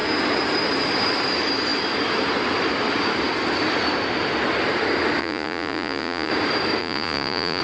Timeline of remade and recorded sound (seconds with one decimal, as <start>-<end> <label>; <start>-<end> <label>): 0.0-5.2 recorded; 5.2-6.3 remade; 6.3-6.8 recorded; 6.8-7.6 remade